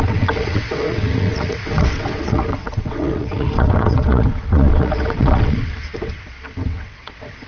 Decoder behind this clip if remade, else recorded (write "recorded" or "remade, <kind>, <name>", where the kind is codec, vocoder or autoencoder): remade, vocoder, WaveNeXt